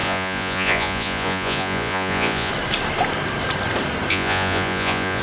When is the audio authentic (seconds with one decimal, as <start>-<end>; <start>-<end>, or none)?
2.5-4.1